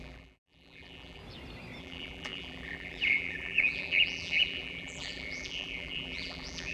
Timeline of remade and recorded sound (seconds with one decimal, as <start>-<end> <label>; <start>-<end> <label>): 0.0-1.2 remade; 1.2-1.8 recorded; 1.8-6.7 remade